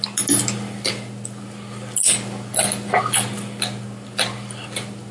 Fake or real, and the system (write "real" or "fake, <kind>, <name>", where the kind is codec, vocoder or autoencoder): real